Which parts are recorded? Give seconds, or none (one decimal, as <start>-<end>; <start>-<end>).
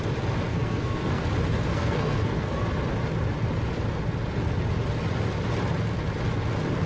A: 0.0-0.5; 1.2-1.7; 2.6-6.9